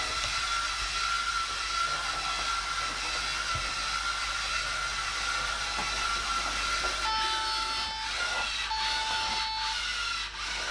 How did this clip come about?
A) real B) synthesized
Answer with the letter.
A